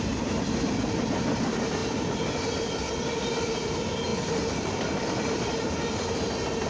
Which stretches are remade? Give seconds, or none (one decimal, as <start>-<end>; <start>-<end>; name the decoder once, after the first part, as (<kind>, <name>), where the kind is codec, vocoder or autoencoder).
none